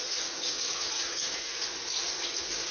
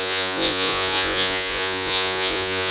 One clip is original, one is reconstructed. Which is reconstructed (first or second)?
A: second